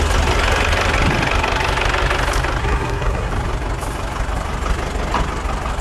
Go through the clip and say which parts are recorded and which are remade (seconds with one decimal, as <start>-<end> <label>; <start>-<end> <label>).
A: 0.0-2.6 recorded; 2.6-3.3 remade; 3.3-5.8 recorded